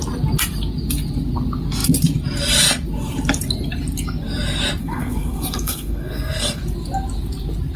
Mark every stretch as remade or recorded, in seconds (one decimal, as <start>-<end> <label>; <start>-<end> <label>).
0.0-4.8 recorded; 4.8-6.6 remade; 6.6-7.8 recorded